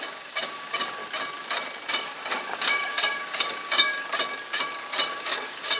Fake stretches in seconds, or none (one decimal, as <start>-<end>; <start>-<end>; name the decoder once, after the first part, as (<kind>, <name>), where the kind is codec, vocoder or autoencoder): 0.0-1.0 (codec, DAC); 1.9-3.9; 5.1-5.8